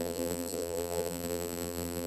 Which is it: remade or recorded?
remade